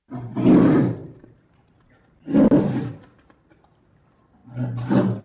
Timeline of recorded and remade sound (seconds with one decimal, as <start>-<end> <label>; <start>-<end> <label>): 0.0-1.0 recorded; 1.0-2.6 remade; 2.6-4.4 recorded; 4.4-5.2 remade